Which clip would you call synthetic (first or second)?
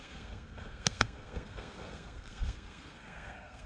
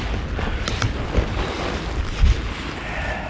first